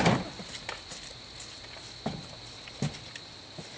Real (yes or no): yes